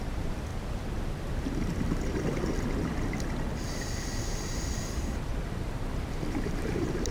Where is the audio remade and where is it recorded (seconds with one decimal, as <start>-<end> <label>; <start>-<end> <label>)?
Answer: 0.0-0.5 remade; 0.5-4.8 recorded; 4.8-5.3 remade; 5.3-6.5 recorded; 6.5-7.1 remade